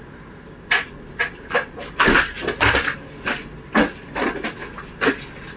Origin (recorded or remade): recorded